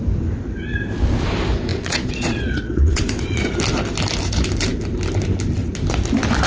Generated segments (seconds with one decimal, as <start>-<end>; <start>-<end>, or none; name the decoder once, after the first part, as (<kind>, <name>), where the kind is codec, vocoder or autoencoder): 1.7-3.5 (vocoder, Vocos)